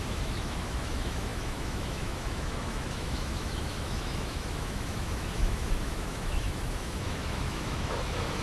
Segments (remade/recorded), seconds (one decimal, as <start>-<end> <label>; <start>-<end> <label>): 0.0-8.4 remade